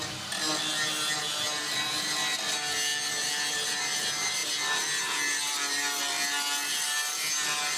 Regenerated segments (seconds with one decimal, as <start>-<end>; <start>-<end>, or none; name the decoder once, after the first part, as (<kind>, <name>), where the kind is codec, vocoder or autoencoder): none